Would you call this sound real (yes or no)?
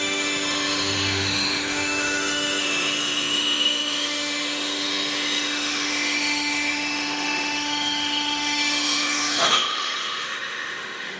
no